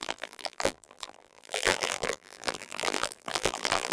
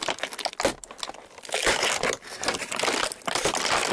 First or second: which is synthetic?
first